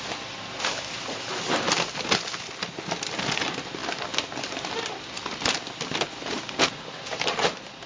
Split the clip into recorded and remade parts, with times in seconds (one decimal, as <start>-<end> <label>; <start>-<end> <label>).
0.0-7.9 recorded